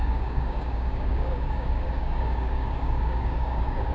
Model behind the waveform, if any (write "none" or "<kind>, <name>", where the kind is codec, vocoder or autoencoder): codec, DAC